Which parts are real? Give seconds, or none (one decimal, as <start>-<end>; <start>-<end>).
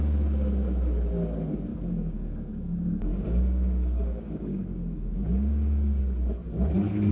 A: 0.0-1.7; 6.0-7.1